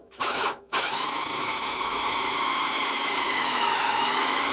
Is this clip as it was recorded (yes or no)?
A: no